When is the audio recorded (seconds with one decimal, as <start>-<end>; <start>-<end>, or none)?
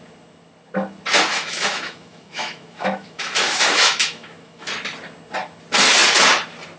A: 0.0-1.3; 4.7-6.8